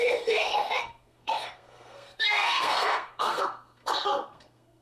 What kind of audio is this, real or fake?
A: fake